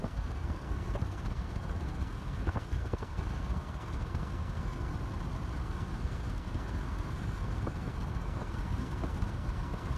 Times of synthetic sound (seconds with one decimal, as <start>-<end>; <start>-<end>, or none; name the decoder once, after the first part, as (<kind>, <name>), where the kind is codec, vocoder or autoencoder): 0.0-4.9 (codec, SNAC); 5.6-10.0